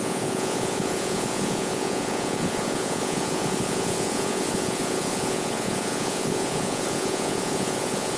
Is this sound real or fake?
fake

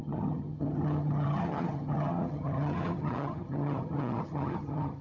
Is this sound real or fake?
fake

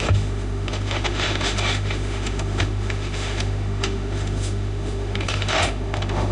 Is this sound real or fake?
fake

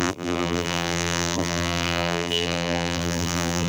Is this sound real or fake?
fake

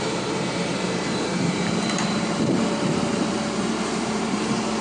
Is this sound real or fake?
fake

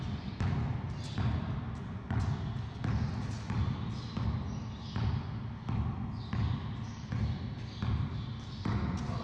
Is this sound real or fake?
real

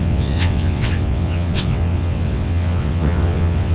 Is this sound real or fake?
fake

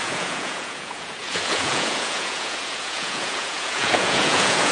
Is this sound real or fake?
fake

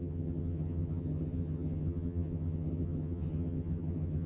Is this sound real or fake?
fake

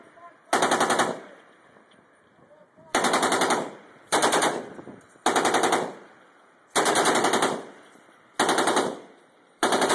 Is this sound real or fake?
real